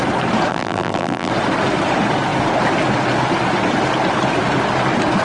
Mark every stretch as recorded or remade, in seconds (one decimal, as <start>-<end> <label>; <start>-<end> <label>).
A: 0.0-0.5 recorded; 0.5-1.3 remade; 1.3-5.2 recorded